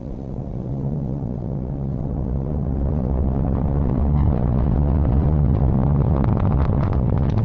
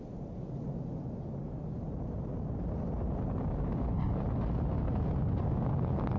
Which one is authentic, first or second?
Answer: second